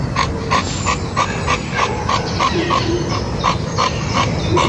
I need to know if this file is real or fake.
real